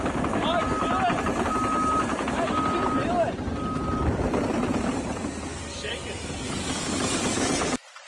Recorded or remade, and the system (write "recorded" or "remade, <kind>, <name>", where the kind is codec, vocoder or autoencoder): recorded